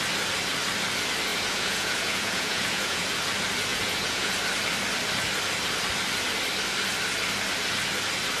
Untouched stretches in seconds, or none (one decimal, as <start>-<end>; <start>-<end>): 0.0-1.3; 3.1-3.7; 4.3-8.4